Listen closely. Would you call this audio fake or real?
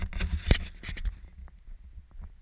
real